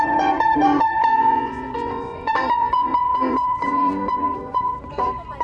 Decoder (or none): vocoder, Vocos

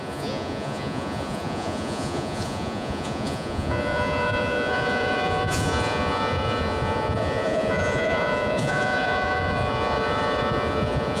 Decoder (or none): vocoder, Vocos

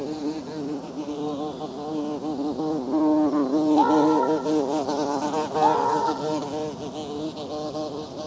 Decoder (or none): none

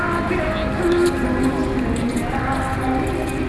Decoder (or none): none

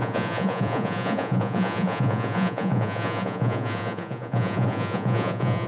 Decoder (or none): vocoder, Vocos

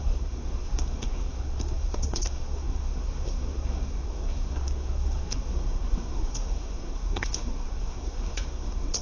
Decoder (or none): codec, SNAC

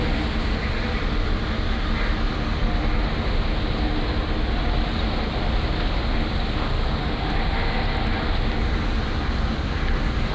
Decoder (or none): none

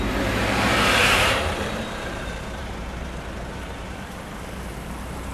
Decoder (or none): vocoder, BigVGAN v2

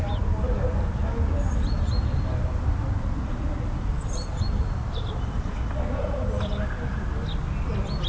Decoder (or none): none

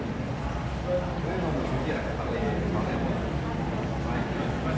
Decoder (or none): none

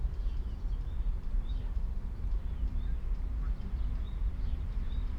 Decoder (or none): vocoder, BigVGAN v2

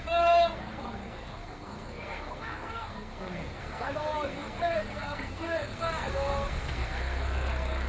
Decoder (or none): codec, SNAC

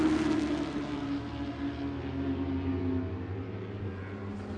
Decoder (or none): none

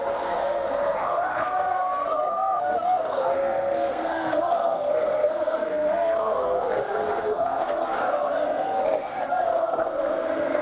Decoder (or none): codec, SNAC